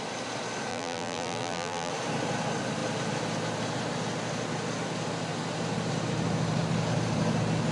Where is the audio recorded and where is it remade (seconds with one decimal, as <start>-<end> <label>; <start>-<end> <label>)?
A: 0.0-0.7 recorded; 0.7-1.9 remade; 1.9-7.7 recorded